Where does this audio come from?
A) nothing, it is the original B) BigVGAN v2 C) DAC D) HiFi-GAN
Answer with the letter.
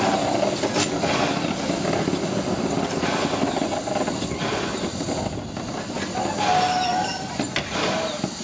A